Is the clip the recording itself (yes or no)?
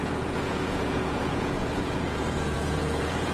no